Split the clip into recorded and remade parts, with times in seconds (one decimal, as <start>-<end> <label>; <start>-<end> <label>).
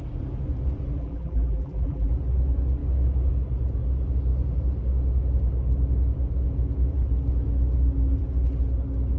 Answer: 0.0-1.0 recorded; 1.0-2.1 remade; 2.1-9.2 recorded